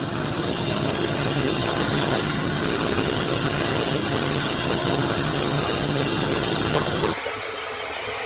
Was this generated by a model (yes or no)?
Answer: yes